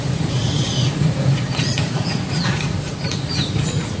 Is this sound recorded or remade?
remade